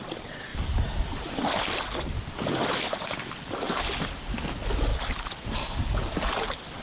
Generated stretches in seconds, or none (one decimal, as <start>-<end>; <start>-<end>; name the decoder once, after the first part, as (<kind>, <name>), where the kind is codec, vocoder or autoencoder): none